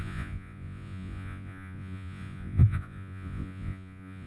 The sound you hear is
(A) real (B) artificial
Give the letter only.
B